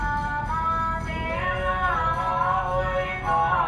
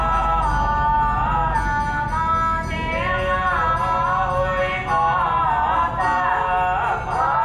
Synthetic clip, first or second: first